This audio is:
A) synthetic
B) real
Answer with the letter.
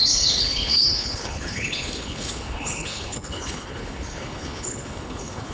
A